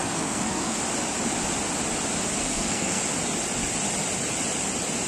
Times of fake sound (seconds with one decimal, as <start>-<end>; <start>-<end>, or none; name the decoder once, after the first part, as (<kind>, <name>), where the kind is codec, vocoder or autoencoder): 0.0-0.8 (codec, SNAC); 2.4-3.0